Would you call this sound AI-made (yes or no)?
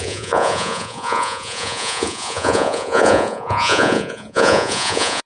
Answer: yes